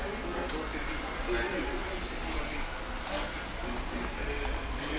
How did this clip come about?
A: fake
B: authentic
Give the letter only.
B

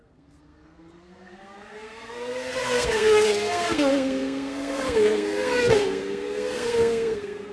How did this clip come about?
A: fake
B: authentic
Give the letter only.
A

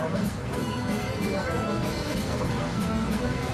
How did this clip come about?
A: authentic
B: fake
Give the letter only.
B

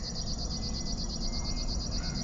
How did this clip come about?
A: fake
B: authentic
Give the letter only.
B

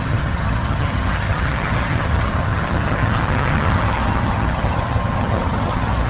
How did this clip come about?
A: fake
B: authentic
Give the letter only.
A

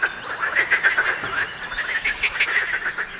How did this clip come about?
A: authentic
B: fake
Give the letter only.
A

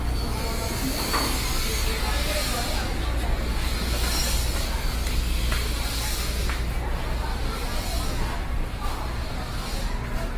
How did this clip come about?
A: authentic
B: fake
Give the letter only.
A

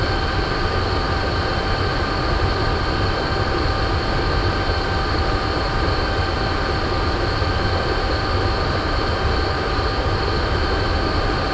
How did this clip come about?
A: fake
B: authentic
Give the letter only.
B